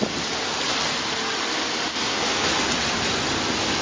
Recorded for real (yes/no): yes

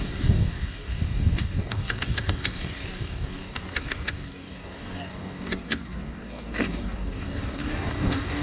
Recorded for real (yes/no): no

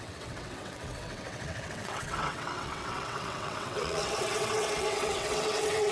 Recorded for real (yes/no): no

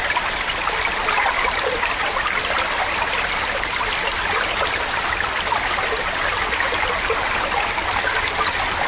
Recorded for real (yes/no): yes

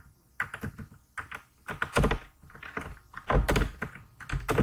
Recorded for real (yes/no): yes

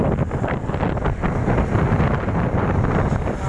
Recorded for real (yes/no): yes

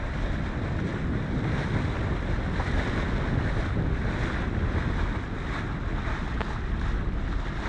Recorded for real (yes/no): yes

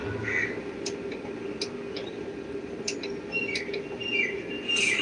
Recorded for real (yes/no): yes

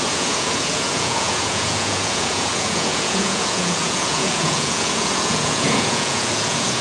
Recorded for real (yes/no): no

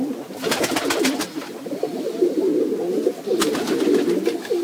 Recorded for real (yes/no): yes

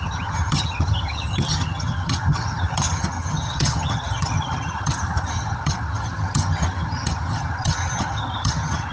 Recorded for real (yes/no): no